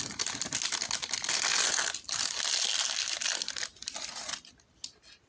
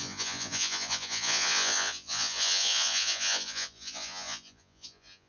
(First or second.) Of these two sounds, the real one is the first